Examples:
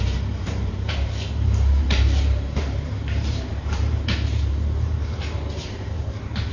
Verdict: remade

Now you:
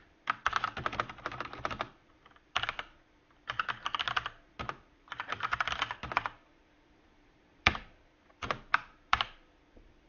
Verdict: remade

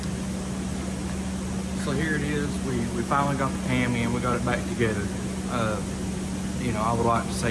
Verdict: recorded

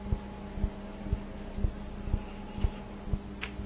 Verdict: recorded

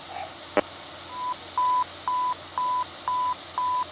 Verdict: recorded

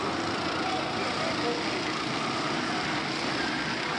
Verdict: recorded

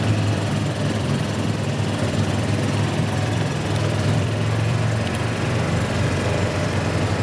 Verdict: remade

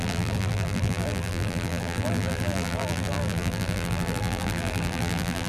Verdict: remade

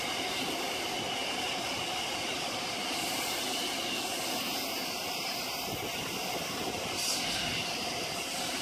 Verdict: recorded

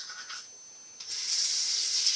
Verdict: recorded